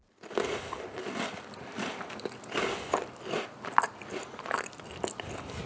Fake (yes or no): no